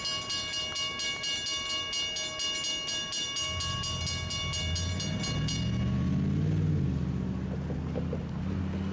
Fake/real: real